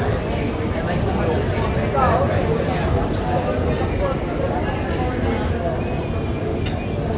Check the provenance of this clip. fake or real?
real